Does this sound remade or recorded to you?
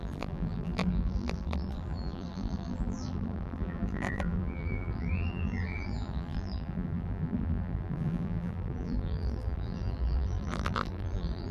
remade